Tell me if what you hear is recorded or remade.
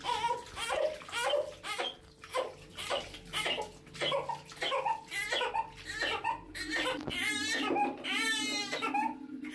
recorded